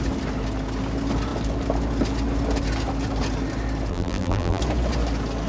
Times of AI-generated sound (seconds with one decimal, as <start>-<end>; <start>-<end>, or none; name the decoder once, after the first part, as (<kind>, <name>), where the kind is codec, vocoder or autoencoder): 3.9-4.6 (vocoder, BigVGAN v2)